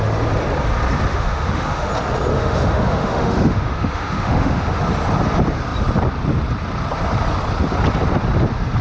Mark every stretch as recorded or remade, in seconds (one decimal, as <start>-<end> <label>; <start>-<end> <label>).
0.0-1.1 recorded; 1.1-1.9 remade; 1.9-2.3 recorded; 2.3-4.8 remade; 4.8-8.8 recorded